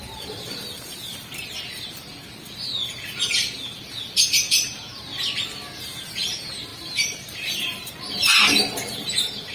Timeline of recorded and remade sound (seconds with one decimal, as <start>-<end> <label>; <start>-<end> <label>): 0.0-5.1 remade; 5.1-5.8 recorded; 5.8-9.5 remade